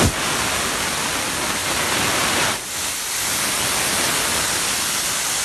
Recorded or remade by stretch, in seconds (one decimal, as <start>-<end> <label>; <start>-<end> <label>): 0.0-5.4 recorded